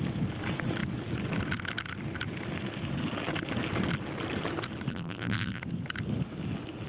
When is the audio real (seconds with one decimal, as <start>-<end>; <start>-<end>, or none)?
0.0-4.9; 5.6-6.9